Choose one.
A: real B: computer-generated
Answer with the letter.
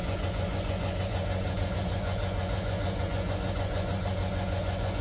B